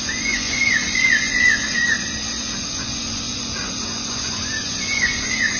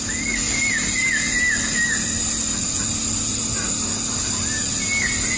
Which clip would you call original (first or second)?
second